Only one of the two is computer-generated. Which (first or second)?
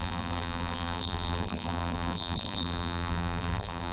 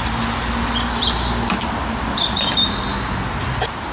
first